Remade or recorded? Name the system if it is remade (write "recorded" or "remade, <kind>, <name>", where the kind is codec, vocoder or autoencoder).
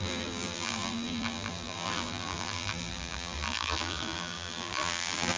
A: remade, vocoder, BigVGAN v2